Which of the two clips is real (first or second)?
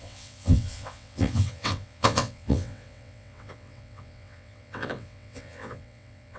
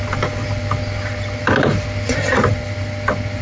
second